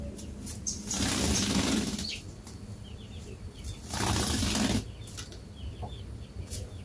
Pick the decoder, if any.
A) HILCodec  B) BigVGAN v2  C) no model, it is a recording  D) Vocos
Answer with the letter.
C